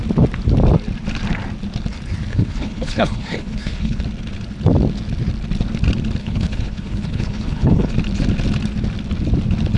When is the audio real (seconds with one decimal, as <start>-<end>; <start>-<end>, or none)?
0.0-2.3; 4.0-6.2; 7.9-9.8

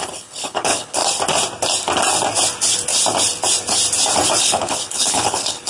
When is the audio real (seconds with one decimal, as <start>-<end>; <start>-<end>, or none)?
1.0-4.4

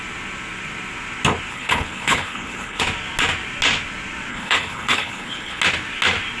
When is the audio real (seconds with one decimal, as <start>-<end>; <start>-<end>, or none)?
0.0-1.5; 2.8-4.3; 5.6-6.4

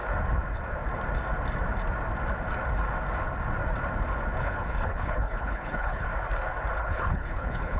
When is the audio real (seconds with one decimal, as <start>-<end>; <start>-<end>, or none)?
0.0-4.4; 6.1-6.8

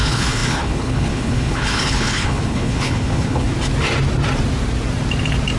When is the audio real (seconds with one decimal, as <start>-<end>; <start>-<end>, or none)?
3.5-5.6

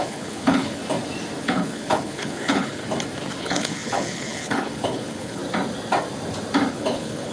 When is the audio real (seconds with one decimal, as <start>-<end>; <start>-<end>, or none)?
0.8-1.4; 2.8-3.4; 5.4-6.7

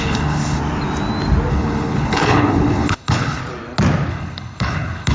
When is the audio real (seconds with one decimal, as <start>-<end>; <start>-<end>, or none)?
0.6-1.5; 3.4-4.1

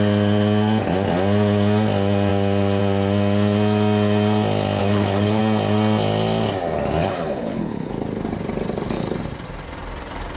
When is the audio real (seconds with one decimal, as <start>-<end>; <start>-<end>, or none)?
0.0-4.8; 5.4-7.0; 7.9-10.4